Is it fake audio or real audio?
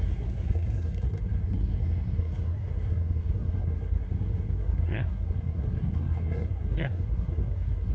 fake